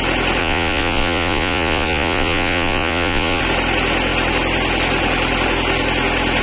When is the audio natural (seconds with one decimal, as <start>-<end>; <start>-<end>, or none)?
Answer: 0.0-0.4; 3.4-6.4